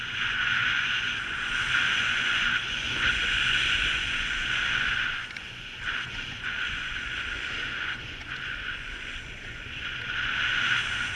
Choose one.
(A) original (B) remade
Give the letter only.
B